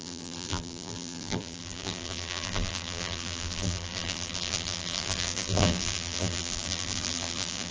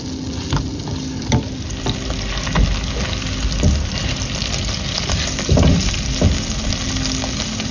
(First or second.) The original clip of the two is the second